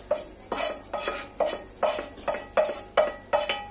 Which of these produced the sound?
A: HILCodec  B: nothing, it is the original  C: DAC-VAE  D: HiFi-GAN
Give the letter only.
B